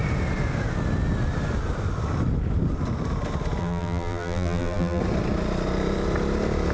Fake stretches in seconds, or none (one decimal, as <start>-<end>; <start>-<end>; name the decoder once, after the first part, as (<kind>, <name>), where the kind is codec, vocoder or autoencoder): 3.6-5.0 (vocoder, BigVGAN v2)